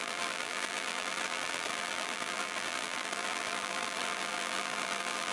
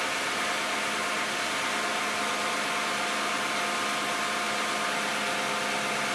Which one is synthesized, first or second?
first